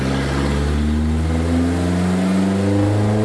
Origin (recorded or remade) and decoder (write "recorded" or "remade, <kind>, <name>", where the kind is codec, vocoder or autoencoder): recorded